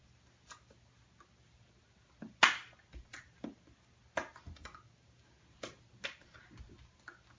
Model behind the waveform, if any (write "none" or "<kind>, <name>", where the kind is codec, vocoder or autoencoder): none